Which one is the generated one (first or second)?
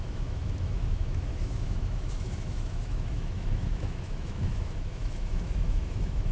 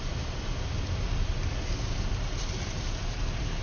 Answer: first